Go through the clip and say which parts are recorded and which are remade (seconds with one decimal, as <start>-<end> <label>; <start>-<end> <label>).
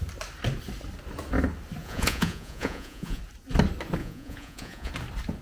0.0-1.8 recorded; 1.8-3.2 remade; 3.2-4.0 recorded; 4.0-4.9 remade; 4.9-5.4 recorded